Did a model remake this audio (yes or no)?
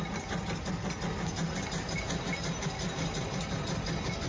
no